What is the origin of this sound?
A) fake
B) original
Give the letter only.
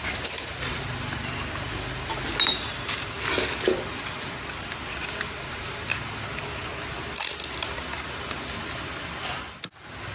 B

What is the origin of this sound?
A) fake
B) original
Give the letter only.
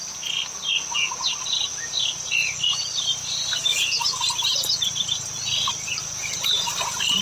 B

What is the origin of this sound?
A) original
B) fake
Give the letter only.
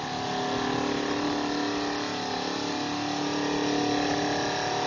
A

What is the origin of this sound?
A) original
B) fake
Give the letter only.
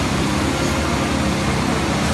A